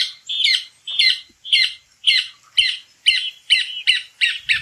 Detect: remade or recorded recorded